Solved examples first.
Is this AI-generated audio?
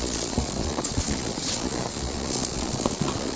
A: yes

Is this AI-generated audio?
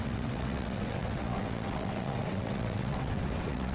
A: yes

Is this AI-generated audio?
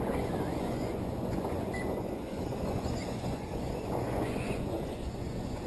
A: yes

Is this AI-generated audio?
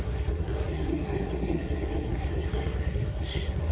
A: yes